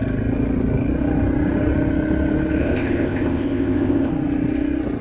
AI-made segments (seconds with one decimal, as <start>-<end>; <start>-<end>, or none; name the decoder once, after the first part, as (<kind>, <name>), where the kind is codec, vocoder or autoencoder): 2.6-4.1 (codec, ZipCodec)